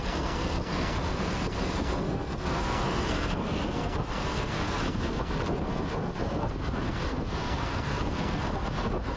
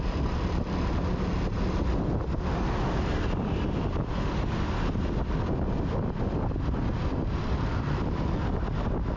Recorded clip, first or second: second